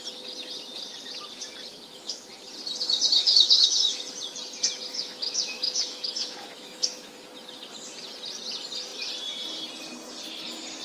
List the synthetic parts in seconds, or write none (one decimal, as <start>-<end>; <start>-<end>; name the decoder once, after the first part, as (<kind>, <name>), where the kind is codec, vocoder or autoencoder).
1.7-2.3 (autoencoder, DAC-VAE); 3.2-4.0; 4.9-7.1